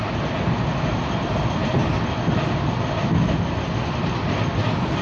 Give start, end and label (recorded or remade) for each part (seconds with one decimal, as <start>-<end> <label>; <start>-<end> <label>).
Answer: 0.0-5.0 recorded